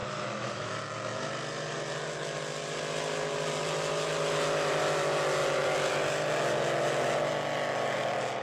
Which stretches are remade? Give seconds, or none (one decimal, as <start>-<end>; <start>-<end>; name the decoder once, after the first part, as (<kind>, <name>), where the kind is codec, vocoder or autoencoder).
0.0-0.8 (autoencoder, DAC-VAE)